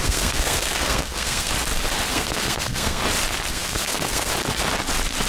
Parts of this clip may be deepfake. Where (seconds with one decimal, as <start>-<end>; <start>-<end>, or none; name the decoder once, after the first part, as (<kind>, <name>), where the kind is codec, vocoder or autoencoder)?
0.0-1.5 (codec, SNAC); 2.1-3.0; 3.5-4.3